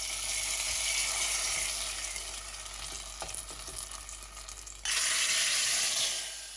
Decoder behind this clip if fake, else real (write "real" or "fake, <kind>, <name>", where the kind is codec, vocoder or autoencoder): real